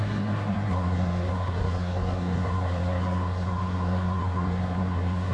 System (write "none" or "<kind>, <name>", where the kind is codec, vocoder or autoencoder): codec, SNAC